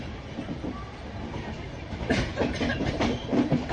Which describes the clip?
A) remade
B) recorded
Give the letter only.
A